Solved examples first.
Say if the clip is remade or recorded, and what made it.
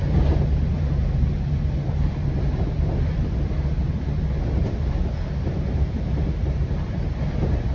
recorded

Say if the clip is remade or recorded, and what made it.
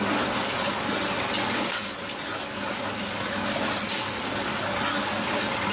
recorded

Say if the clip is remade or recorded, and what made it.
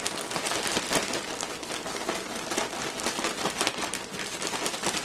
recorded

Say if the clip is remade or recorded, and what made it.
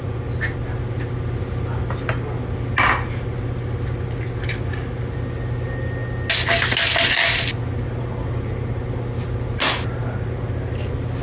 recorded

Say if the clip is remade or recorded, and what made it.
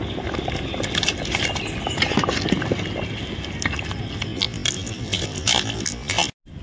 recorded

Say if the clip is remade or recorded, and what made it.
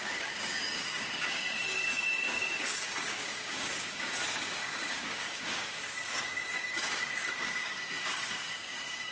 remade, codec, DAC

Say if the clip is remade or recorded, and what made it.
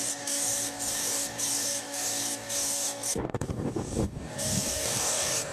remade, codec, DAC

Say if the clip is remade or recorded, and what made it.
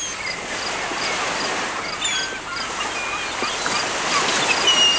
recorded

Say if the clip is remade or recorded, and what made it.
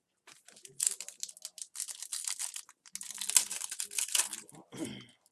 recorded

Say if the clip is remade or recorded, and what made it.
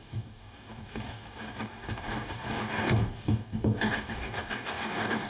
remade, codec, DAC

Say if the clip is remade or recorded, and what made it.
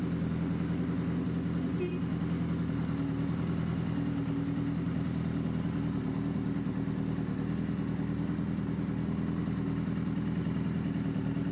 recorded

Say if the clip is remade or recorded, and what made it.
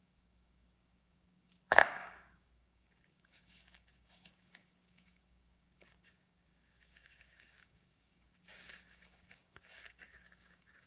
remade, codec, DAC